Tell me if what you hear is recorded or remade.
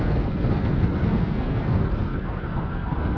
remade